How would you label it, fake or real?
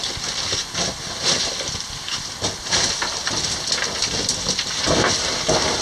real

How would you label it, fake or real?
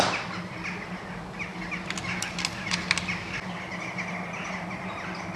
real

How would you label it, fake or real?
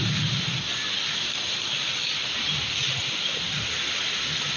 real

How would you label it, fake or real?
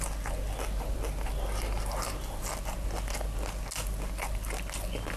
real